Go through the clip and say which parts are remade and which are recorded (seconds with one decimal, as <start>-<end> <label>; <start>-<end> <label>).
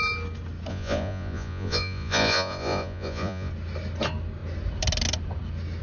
0.0-0.7 recorded; 0.7-3.5 remade; 3.5-5.8 recorded